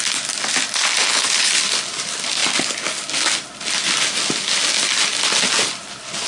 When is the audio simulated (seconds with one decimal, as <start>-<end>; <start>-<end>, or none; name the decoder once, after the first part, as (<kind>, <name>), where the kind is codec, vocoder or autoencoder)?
1.0-1.5 (codec, HILCodec)